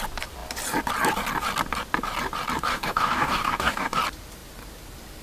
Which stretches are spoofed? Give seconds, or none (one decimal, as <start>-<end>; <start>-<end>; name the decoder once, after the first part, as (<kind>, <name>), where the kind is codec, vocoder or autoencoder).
2.7-4.0 (codec, DAC)